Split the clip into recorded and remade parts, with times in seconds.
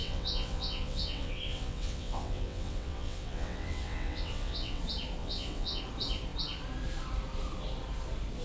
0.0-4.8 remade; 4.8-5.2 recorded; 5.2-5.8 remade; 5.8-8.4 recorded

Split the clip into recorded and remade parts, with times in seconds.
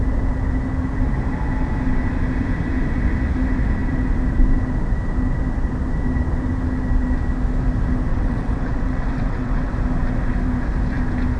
0.0-8.1 recorded; 8.1-9.7 remade; 9.7-11.4 recorded